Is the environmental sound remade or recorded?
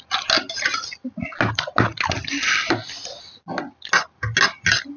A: recorded